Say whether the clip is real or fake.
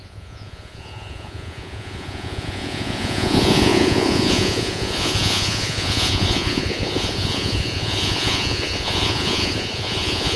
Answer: fake